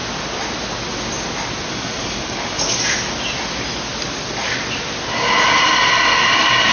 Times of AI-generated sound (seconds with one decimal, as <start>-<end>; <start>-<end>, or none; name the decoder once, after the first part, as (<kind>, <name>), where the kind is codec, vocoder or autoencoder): 1.7-2.8 (codec, DAC)

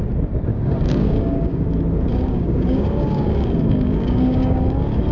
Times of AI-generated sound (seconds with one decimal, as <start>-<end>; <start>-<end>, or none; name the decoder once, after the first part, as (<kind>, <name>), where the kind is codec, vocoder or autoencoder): 0.5-1.7 (codec, DAC); 2.1-5.1

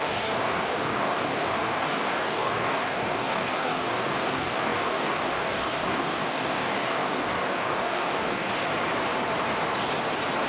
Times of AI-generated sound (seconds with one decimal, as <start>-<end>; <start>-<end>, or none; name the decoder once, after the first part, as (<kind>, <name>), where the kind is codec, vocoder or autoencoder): 0.0-8.5 (codec, DAC)